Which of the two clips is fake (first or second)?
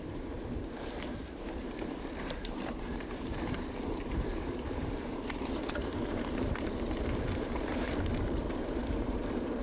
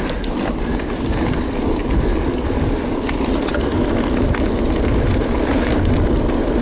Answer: first